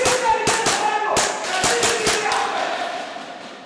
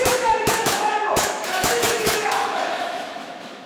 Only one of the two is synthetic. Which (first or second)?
second